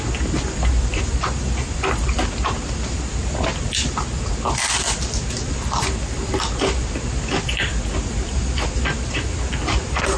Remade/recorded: recorded